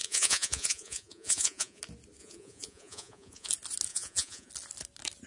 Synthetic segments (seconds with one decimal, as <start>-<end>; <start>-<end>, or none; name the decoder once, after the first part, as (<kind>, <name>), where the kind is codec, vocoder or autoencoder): 0.0-1.8 (vocoder, Vocos); 2.2-3.5; 3.9-4.5